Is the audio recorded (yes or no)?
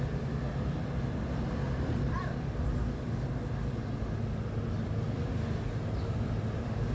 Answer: yes